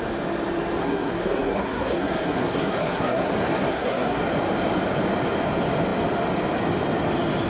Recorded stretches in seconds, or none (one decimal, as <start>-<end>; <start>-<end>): 0.0-0.8; 4.2-7.5